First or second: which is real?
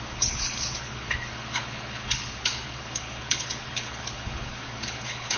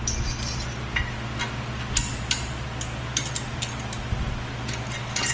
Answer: second